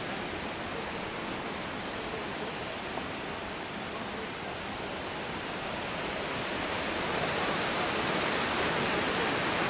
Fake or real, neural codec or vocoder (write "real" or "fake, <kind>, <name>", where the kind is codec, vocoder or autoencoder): real